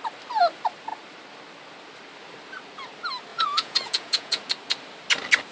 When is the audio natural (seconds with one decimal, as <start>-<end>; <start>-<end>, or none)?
0.0-3.3; 4.4-5.5